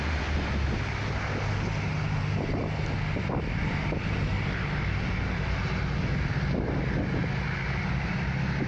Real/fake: real